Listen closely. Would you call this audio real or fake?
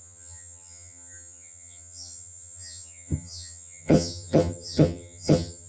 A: fake